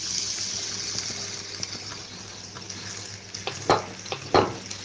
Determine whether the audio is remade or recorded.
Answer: recorded